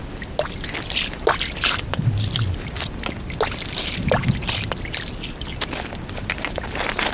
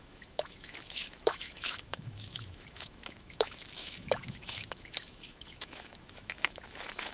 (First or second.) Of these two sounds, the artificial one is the second